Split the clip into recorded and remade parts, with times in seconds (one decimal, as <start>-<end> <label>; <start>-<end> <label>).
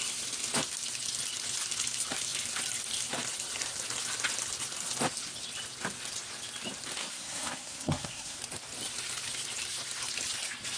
0.0-7.0 recorded; 7.0-8.4 remade; 8.4-10.8 recorded